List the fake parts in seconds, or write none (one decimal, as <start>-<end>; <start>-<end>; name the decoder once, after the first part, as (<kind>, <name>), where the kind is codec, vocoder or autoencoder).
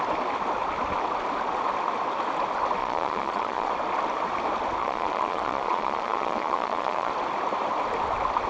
2.8-3.7 (vocoder, Vocos); 4.8-7.1